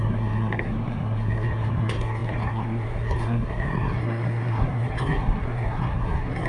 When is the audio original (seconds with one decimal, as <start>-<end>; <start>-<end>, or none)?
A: none